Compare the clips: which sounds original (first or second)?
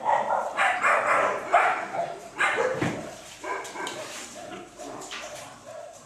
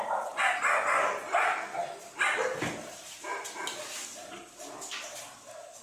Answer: second